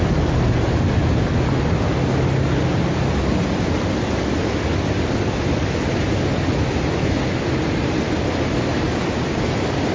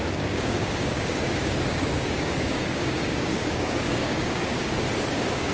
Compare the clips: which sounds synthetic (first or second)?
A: second